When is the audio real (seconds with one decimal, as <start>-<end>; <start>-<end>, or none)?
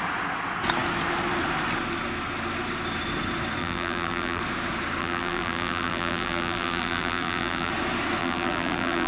0.0-3.6; 4.4-5.0; 7.7-8.2